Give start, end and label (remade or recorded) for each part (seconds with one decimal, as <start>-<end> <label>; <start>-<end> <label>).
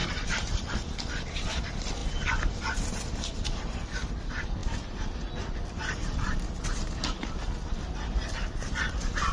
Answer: 0.0-9.3 remade